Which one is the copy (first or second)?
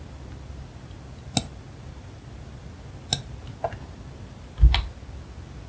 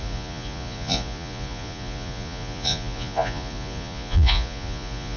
second